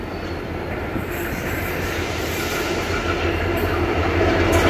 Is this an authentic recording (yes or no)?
yes